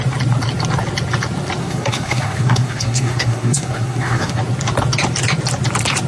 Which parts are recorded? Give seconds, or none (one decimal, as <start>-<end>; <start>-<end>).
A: 0.0-1.6; 4.4-6.1